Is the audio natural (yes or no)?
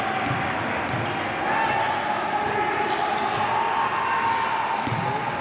yes